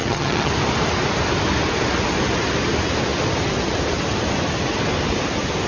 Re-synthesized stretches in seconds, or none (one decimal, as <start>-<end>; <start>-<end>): 0.0-0.5